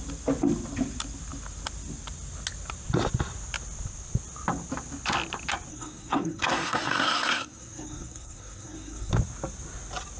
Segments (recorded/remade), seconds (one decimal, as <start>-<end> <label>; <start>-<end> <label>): 0.0-5.7 recorded; 5.7-9.1 remade; 9.1-10.2 recorded